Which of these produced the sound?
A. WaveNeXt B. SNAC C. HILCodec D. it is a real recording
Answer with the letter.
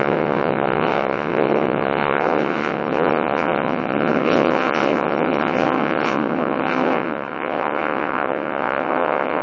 A